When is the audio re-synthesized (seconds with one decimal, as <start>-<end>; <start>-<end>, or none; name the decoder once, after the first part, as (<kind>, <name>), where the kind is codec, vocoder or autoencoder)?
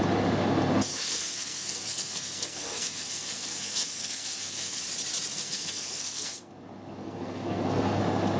0.9-4.8 (codec, SNAC); 5.3-6.5; 7.0-8.0